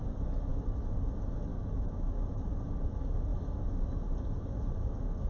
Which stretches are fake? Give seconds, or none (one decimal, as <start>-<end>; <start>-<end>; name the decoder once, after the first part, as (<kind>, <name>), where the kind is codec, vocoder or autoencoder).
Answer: 1.5-2.4 (autoencoder, DAC-VAE)